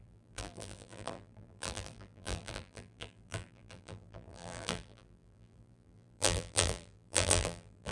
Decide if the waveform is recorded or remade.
remade